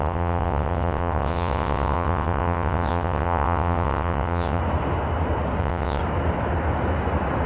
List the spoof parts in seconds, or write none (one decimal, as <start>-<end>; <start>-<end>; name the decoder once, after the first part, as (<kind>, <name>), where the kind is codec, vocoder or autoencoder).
0.0-4.6 (vocoder, WaveNeXt); 5.6-6.0